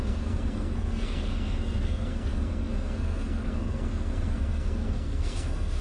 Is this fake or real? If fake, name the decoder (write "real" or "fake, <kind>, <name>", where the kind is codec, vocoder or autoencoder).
fake, codec, SNAC